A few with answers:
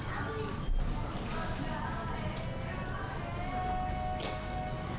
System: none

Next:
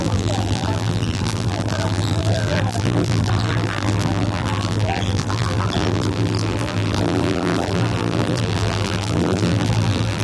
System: vocoder, BigVGAN v2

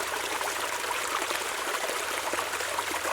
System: vocoder, BigVGAN v2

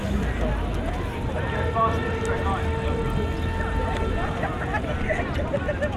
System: none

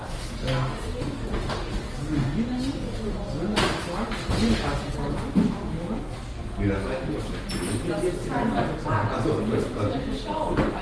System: none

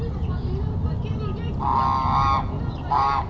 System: none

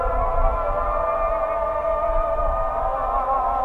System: none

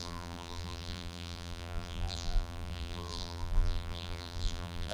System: vocoder, BigVGAN v2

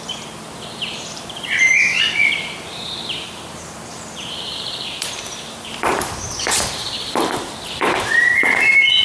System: vocoder, BigVGAN v2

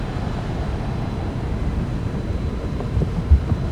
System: vocoder, BigVGAN v2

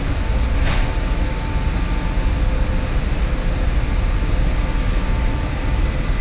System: none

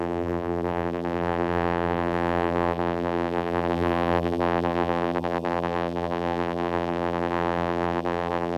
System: vocoder, BigVGAN v2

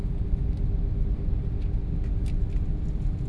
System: none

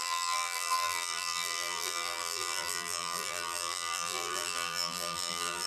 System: vocoder, BigVGAN v2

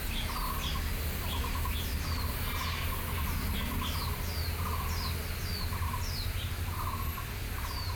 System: none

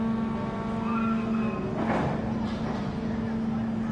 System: none